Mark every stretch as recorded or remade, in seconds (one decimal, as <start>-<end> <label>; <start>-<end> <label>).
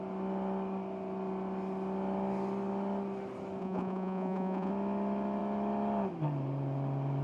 0.0-3.6 recorded; 3.6-4.7 remade; 4.7-7.2 recorded